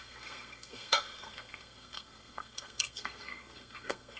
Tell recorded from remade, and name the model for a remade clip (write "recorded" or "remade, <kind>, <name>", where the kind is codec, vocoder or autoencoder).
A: remade, codec, SNAC